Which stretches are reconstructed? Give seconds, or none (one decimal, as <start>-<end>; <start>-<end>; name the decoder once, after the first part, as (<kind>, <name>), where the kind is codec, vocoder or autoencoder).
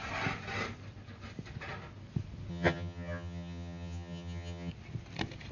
2.5-4.7 (vocoder, HiFi-GAN)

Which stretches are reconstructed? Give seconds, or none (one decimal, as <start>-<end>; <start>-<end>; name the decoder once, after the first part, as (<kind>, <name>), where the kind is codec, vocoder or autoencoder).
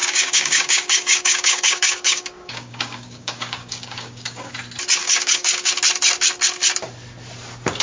0.0-4.5 (codec, DAC); 5.0-5.7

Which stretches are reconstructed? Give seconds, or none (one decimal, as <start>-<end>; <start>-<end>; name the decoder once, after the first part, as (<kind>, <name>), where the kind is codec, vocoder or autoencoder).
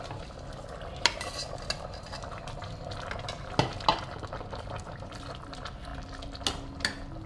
none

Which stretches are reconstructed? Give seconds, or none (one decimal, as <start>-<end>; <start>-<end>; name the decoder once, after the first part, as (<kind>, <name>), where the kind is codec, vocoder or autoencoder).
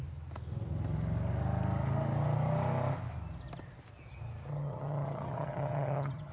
4.5-6.3 (vocoder, HiFi-GAN)